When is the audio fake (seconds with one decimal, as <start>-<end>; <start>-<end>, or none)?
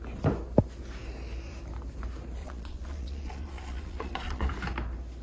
2.4-4.5